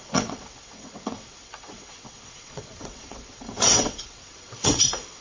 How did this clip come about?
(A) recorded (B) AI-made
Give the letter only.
B